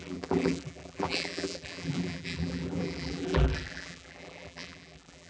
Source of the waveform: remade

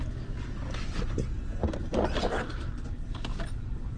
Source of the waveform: recorded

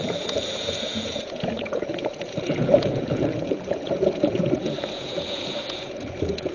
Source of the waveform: remade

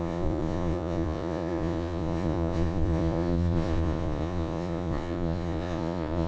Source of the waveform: remade